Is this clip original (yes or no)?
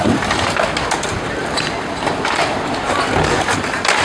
yes